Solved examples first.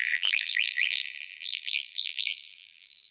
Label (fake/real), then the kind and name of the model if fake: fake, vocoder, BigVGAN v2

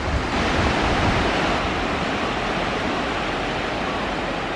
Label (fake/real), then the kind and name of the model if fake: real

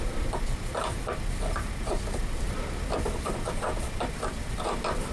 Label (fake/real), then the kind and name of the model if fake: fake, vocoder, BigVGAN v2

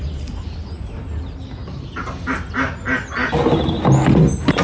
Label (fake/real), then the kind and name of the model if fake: real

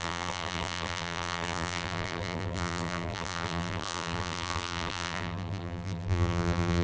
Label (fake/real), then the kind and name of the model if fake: fake, vocoder, BigVGAN v2